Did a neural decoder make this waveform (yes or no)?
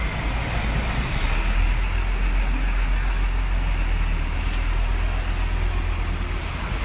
no